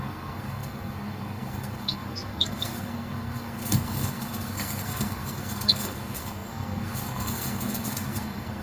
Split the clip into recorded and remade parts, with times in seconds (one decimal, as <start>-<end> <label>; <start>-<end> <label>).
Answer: 0.0-8.6 remade